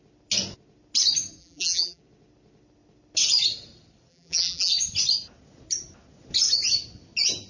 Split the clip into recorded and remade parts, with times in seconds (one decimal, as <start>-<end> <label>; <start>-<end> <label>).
0.0-1.4 recorded; 1.4-2.0 remade; 2.0-4.1 recorded; 4.1-4.7 remade; 4.7-7.5 recorded